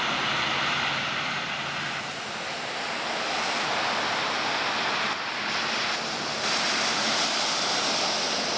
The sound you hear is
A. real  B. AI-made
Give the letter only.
A